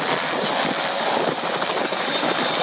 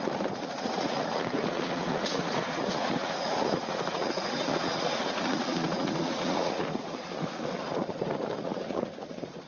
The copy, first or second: second